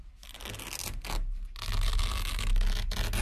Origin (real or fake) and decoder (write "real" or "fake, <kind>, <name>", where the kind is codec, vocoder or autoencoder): real